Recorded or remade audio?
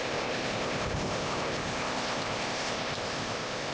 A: remade